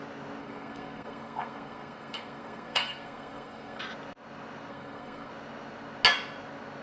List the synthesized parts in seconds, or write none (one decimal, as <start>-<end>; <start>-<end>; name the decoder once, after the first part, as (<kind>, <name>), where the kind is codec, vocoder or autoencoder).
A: 0.4-3.8 (codec, SNAC); 4.7-5.3